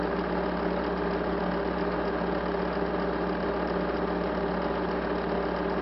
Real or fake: real